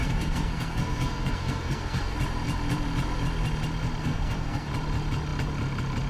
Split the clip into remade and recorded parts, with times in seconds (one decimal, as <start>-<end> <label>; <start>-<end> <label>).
0.0-2.2 remade; 2.2-4.0 recorded; 4.0-4.7 remade; 4.7-6.1 recorded